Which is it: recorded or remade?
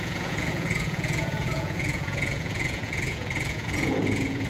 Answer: remade